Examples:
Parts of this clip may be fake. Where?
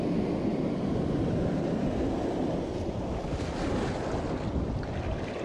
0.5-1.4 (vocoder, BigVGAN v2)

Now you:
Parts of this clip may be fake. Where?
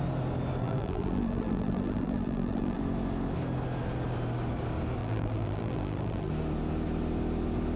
0.6-2.8 (vocoder, BigVGAN v2); 5.0-6.3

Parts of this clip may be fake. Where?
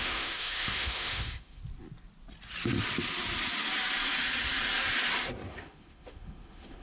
0.0-1.6 (autoencoder, DAC-VAE); 5.5-6.8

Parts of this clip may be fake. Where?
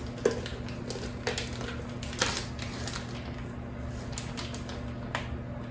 none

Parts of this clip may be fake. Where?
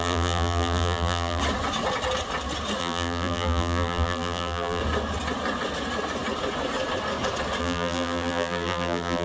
0.0-1.4 (vocoder, BigVGAN v2); 2.8-4.8; 7.6-9.2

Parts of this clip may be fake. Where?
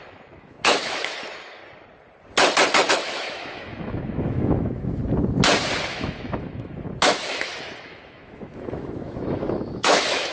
0.0-1.6 (autoencoder, DAC-VAE); 2.9-5.0; 5.9-10.3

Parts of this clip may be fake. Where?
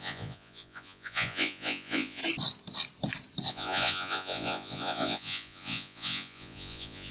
0.0-2.2 (vocoder, Vocos); 3.5-7.1